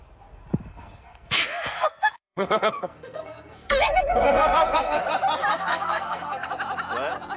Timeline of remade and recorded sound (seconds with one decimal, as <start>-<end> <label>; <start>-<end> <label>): 0.0-0.6 recorded; 0.6-5.0 remade; 5.0-5.5 recorded; 5.5-6.5 remade; 6.5-7.4 recorded